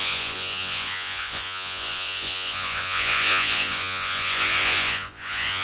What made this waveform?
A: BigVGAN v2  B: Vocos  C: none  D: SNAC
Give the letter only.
B